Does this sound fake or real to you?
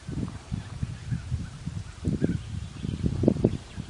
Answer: fake